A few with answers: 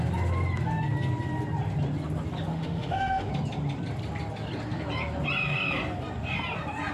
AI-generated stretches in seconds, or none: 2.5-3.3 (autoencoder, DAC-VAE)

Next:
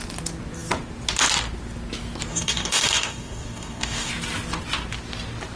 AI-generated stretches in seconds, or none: 2.3-4.1 (codec, DAC)

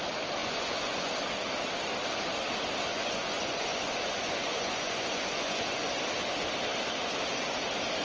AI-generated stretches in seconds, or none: 0.4-1.1 (vocoder, Vocos); 2.9-6.0

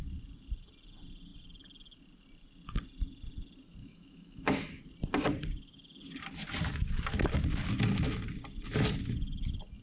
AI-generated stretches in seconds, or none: 3.8-4.8 (autoencoder, DAC-VAE)